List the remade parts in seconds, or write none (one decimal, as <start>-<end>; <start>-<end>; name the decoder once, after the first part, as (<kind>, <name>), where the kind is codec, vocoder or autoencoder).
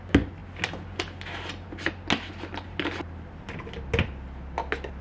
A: none